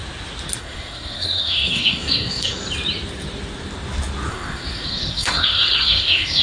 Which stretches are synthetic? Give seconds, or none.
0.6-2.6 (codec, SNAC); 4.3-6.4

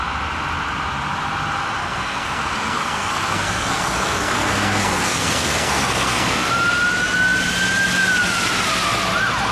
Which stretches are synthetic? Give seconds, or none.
1.8-6.5 (codec, SNAC)